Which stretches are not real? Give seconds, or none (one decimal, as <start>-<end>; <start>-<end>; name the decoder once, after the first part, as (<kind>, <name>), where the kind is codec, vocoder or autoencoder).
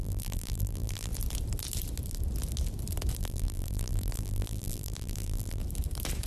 0.0-1.1 (vocoder, BigVGAN v2); 3.2-5.6